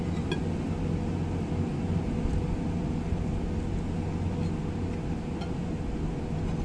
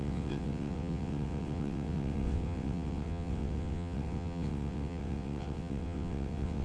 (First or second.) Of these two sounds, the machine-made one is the second